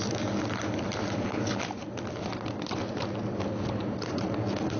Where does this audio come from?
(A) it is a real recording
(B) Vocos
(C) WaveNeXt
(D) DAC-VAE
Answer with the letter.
A